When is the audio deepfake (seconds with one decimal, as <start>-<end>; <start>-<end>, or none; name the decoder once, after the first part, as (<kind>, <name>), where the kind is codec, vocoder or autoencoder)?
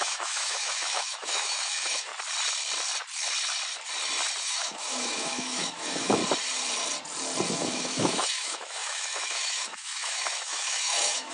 0.0-2.1 (autoencoder, DAC-VAE); 4.4-6.2; 7.5-11.3